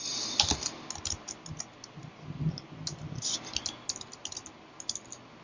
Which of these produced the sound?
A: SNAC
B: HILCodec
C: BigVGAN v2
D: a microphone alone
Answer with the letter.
D